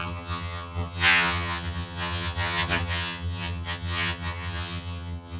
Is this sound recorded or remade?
remade